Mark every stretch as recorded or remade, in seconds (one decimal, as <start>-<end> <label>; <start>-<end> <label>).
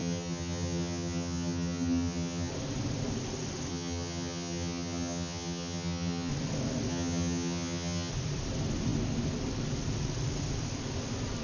0.0-2.5 remade; 2.5-3.7 recorded; 3.7-6.3 remade; 6.3-6.9 recorded; 6.9-8.1 remade; 8.1-11.4 recorded